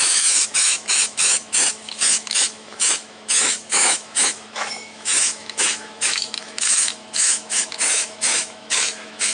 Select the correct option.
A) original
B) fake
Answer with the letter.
B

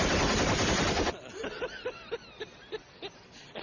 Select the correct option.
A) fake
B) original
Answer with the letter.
B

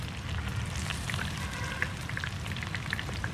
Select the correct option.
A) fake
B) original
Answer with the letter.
B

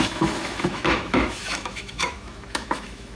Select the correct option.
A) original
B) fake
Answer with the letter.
B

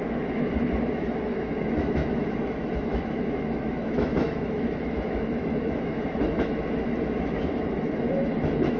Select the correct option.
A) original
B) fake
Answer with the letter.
B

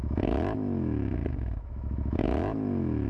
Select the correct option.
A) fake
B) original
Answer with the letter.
A